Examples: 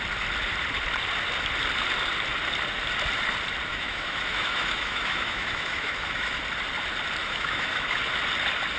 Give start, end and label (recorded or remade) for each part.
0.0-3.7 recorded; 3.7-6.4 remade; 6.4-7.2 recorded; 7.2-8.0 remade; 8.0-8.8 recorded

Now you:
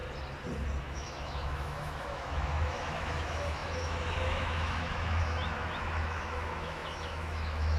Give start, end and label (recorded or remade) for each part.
0.0-0.8 recorded; 0.8-7.8 remade

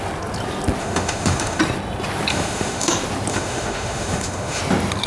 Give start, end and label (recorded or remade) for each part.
0.0-0.8 recorded; 0.8-1.6 remade; 1.6-2.3 recorded; 2.3-2.9 remade; 2.9-3.3 recorded; 3.3-4.6 remade; 4.6-5.1 recorded

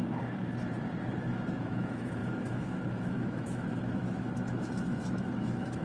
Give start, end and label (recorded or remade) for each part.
0.0-1.2 recorded; 1.2-5.8 remade

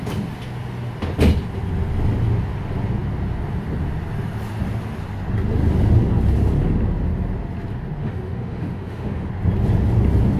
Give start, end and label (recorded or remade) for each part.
0.0-8.0 recorded; 8.0-9.3 remade; 9.3-10.4 recorded

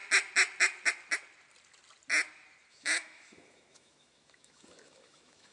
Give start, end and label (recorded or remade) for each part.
0.0-2.7 recorded; 2.7-5.5 remade

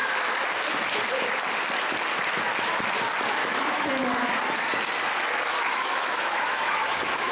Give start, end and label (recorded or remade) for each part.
0.0-3.4 recorded; 3.4-3.9 remade; 3.9-5.7 recorded; 5.7-7.3 remade

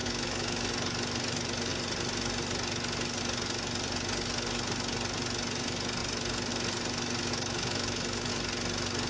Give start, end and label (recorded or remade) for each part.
0.0-0.7 remade; 0.7-7.3 recorded; 7.3-8.3 remade; 8.3-9.1 recorded